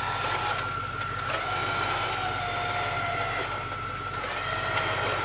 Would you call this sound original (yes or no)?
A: yes